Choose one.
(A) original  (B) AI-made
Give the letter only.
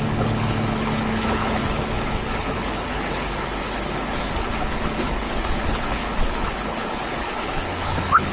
B